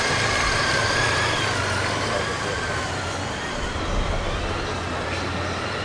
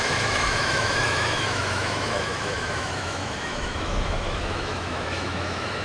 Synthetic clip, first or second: second